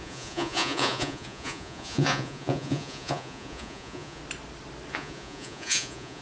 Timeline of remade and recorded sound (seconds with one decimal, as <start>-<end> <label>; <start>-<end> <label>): 0.0-4.2 remade; 4.2-4.9 recorded; 4.9-6.2 remade